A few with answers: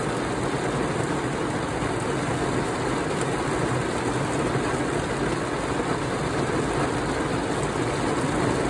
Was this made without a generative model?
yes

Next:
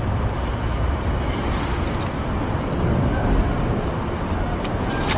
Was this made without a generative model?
yes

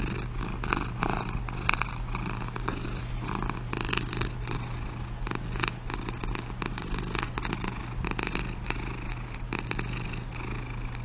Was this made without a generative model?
yes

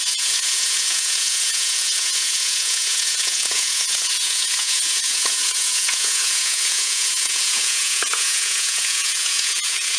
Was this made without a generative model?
no